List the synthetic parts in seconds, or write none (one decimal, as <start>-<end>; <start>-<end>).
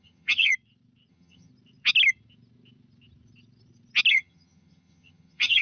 0.0-0.5; 1.1-1.5; 4.1-5.6